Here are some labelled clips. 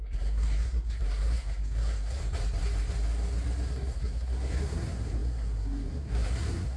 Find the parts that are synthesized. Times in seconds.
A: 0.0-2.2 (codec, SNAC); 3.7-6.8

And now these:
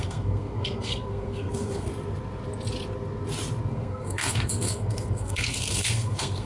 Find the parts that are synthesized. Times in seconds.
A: 0.0-1.9 (codec, SNAC); 3.7-6.5

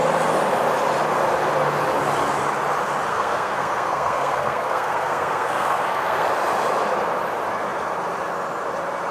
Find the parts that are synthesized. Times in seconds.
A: 3.1-6.3 (codec, SNAC)